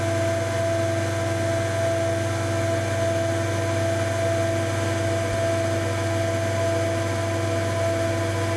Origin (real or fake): real